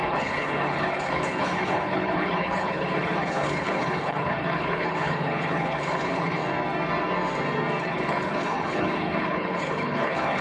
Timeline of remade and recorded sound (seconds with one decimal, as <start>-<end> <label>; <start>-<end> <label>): 0.0-6.4 remade; 6.4-7.8 recorded; 7.8-10.4 remade